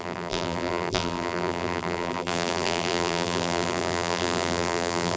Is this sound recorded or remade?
remade